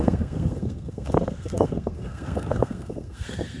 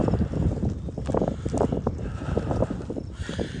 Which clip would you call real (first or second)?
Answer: second